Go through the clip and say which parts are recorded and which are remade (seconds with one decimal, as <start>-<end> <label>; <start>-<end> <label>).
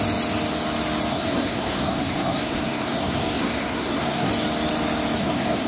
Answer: 0.0-1.1 recorded; 1.1-4.3 remade; 4.3-5.2 recorded; 5.2-5.7 remade